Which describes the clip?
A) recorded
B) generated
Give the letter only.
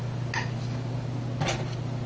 A